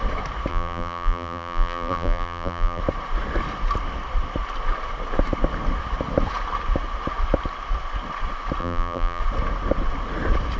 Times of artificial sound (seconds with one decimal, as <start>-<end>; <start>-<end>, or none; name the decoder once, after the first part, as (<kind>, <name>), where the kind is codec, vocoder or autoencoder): 0.5-2.8 (vocoder, BigVGAN v2); 8.6-9.2